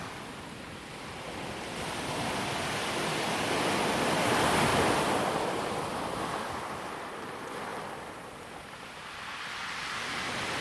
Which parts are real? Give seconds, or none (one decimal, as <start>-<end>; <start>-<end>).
0.0-4.7; 7.1-7.7; 9.6-10.6